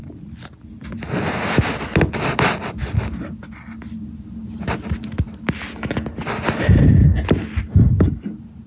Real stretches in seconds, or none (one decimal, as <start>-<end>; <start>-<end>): 0.0-8.7